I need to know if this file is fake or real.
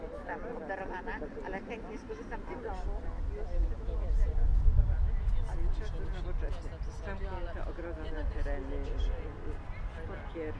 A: real